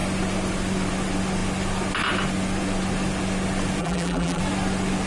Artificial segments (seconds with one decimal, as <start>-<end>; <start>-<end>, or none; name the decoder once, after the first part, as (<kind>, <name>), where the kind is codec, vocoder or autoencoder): 3.8-4.4 (vocoder, BigVGAN v2)